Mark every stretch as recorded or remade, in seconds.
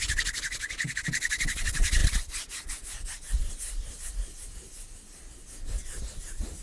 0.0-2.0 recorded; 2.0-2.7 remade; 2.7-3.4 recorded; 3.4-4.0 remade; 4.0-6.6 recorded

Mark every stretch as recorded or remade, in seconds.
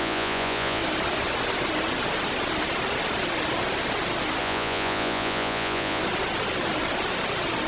0.0-0.8 remade; 0.8-4.4 recorded; 4.4-6.0 remade; 6.0-7.7 recorded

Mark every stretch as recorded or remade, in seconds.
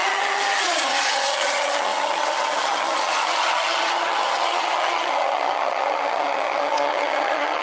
0.0-7.6 remade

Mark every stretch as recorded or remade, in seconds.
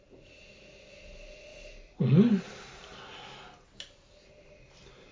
0.0-5.1 recorded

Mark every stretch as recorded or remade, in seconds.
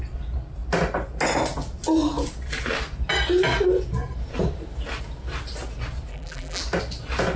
0.0-6.1 recorded; 6.1-6.6 remade; 6.6-7.4 recorded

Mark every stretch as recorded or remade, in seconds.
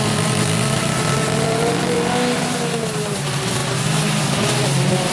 0.0-5.1 recorded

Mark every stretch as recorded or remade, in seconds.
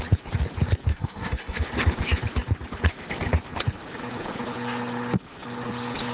0.0-0.9 recorded; 0.9-1.6 remade; 1.6-6.1 recorded